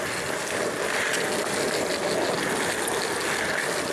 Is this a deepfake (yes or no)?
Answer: no